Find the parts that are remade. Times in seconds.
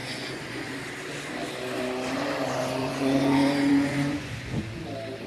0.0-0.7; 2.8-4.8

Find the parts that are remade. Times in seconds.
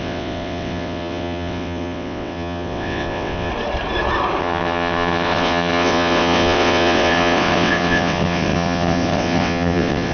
0.0-3.5; 4.4-10.1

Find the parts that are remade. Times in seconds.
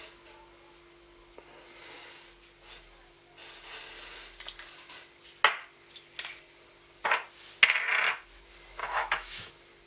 8.8-9.5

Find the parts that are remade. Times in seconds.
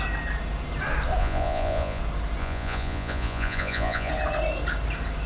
1.2-2.0; 2.4-4.1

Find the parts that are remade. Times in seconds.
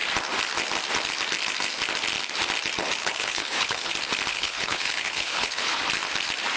3.0-3.9; 4.3-5.8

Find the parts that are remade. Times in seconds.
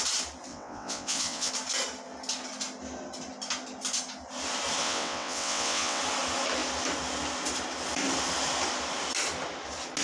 0.5-1.5; 4.8-6.0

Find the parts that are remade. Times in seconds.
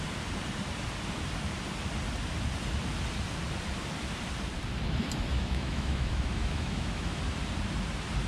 5.3-7.2